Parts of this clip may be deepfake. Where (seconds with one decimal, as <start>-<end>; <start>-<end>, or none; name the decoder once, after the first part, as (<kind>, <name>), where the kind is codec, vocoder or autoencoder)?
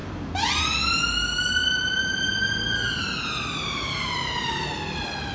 none